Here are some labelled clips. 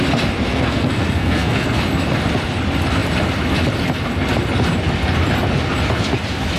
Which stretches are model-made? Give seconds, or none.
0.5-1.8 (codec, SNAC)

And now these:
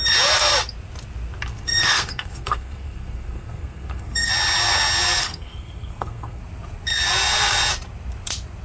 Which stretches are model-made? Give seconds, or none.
1.5-4.3 (codec, SNAC); 5.2-6.4

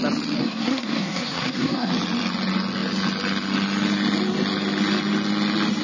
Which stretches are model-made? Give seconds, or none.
0.4-1.9 (codec, SNAC)

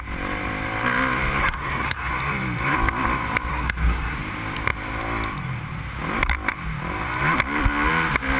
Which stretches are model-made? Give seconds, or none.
1.4-2.1 (codec, SNAC); 3.5-4.2

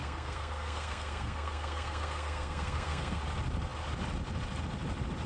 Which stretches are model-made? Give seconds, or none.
0.0-3.2 (codec, SNAC)

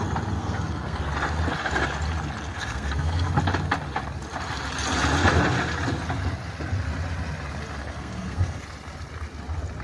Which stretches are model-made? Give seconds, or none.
0.4-1.0 (codec, SNAC); 2.5-3.3; 7.8-8.6

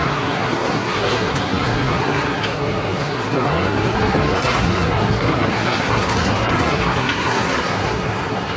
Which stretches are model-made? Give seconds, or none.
0.0-8.6 (codec, SNAC)

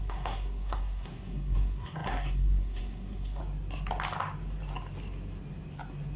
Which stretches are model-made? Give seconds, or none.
0.0-3.4 (codec, SNAC)